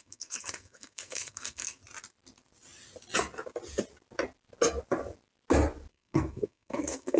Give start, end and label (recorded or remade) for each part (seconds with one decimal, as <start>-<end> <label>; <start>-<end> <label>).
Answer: 0.0-1.8 remade; 1.8-5.9 recorded; 5.9-7.2 remade

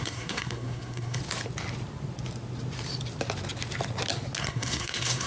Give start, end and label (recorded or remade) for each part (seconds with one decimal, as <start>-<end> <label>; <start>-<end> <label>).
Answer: 0.0-1.2 remade; 1.2-4.4 recorded; 4.4-5.3 remade

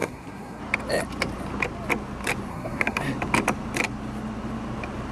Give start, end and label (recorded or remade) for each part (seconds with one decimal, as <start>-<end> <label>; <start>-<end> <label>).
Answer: 0.0-0.6 remade; 0.6-2.5 recorded; 2.5-3.0 remade; 3.0-5.1 recorded